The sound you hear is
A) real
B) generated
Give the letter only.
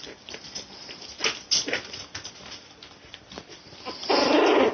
A